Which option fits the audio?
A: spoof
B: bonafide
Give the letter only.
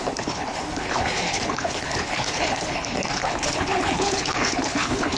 A